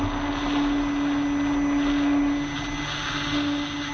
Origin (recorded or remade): recorded